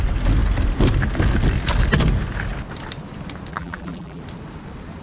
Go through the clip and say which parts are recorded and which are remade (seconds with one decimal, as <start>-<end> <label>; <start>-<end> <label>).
0.0-3.5 recorded; 3.5-4.2 remade; 4.2-5.0 recorded